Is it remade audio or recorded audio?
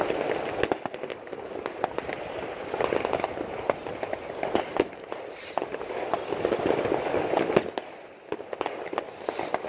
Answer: recorded